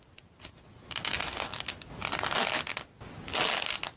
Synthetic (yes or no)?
no